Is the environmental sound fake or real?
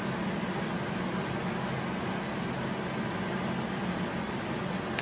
real